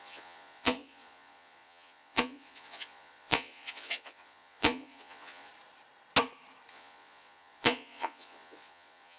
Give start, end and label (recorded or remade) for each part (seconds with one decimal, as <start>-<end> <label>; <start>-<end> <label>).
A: 0.0-5.5 remade; 5.5-6.7 recorded; 6.7-9.2 remade